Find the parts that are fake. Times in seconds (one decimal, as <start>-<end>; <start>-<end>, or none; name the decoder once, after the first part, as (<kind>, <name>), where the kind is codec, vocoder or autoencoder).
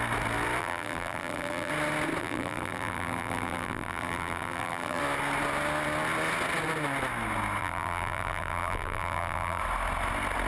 0.6-1.7 (vocoder, BigVGAN v2); 2.2-5.0; 7.6-9.6